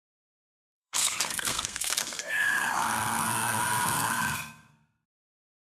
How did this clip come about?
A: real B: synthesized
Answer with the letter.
B